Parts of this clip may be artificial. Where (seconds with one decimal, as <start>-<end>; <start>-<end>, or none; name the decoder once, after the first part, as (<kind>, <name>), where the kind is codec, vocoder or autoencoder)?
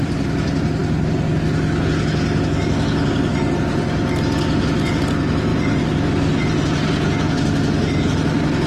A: none